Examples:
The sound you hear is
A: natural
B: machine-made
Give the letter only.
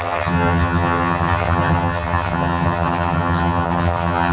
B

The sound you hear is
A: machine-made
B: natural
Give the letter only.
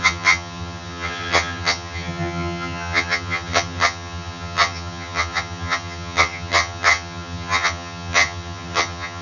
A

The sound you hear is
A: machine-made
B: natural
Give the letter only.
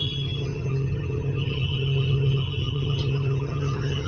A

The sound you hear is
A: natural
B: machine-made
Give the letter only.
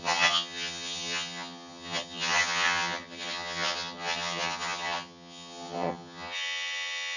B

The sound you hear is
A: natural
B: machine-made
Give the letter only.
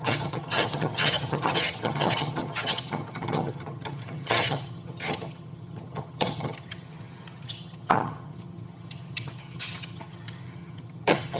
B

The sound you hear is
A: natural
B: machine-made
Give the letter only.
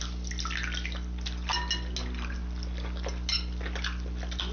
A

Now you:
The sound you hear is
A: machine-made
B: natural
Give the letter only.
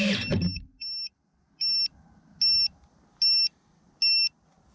B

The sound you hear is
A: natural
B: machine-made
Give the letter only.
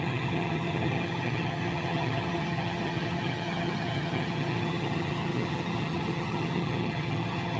B